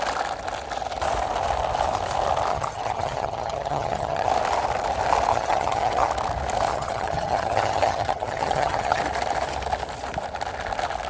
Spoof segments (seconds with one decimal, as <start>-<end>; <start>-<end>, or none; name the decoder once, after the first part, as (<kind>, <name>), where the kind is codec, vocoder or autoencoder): 2.5-4.3 (vocoder, HiFi-GAN); 5.3-6.1; 6.7-9.0